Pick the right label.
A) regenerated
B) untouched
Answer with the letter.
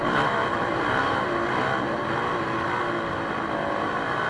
B